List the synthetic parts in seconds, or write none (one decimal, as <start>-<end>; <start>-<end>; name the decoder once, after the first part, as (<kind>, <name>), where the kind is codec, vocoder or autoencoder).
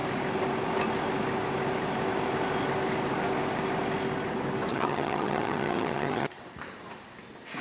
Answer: 4.7-6.4 (vocoder, HiFi-GAN)